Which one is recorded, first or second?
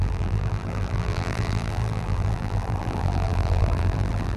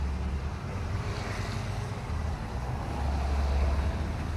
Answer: second